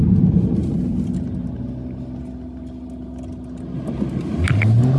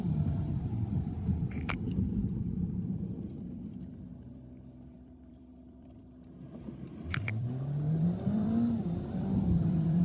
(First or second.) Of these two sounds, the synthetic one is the second